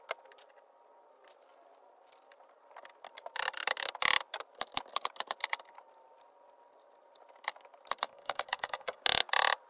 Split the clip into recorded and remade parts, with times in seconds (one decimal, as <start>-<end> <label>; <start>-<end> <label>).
0.0-8.1 recorded; 8.1-9.0 remade; 9.0-9.7 recorded